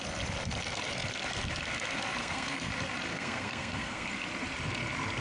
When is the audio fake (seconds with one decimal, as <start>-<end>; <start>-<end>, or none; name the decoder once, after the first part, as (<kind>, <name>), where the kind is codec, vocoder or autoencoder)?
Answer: 2.2-2.7 (codec, SNAC); 3.1-4.1